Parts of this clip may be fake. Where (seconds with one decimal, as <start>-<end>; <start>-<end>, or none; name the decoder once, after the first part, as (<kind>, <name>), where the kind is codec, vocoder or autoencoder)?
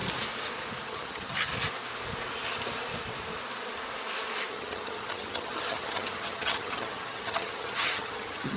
0.8-1.5 (vocoder, HiFi-GAN); 4.5-8.6